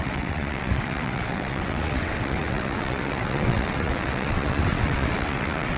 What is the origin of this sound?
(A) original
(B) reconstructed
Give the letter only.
B